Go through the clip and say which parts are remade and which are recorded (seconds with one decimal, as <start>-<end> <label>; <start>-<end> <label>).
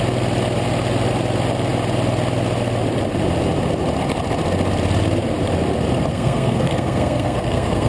0.0-6.1 recorded; 6.1-7.9 remade